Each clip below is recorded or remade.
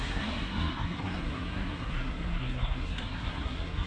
remade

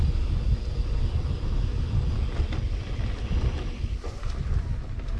recorded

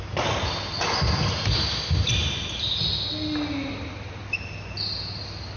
recorded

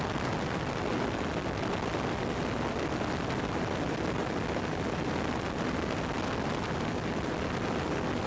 recorded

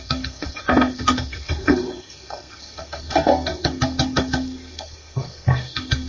remade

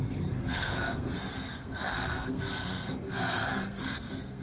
remade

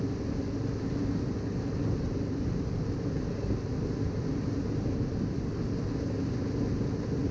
recorded